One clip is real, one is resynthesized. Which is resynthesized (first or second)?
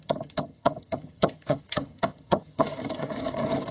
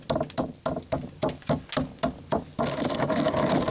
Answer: first